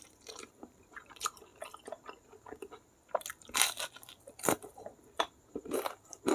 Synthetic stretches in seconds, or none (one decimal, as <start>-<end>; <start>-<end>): 0.0-1.5; 4.3-6.3